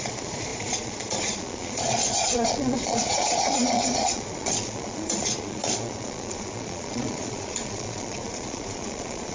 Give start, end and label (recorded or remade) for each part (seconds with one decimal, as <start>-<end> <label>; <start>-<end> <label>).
0.0-9.3 remade